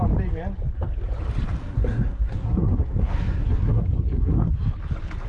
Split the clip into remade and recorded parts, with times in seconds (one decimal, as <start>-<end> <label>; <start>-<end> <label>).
0.0-1.6 recorded; 1.6-4.5 remade; 4.5-5.3 recorded